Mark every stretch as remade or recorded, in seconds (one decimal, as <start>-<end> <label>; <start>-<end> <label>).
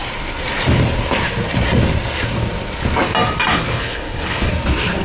0.0-3.5 recorded; 3.5-4.5 remade; 4.5-5.0 recorded